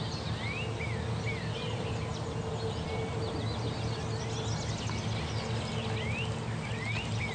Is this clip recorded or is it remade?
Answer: recorded